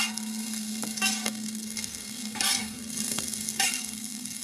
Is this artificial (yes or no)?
yes